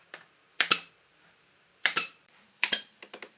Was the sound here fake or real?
fake